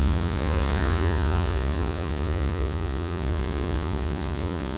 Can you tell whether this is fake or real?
fake